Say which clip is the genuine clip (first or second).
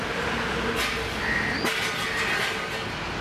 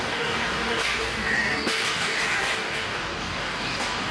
first